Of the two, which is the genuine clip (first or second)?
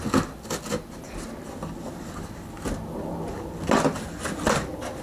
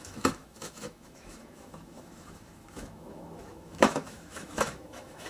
first